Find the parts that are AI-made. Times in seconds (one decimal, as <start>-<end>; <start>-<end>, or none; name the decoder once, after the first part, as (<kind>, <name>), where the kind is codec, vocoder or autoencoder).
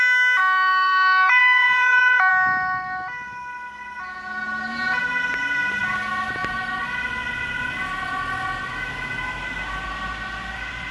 0.4-2.3 (vocoder, Vocos)